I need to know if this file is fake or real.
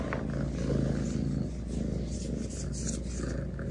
real